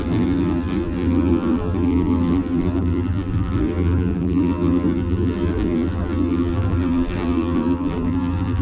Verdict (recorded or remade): remade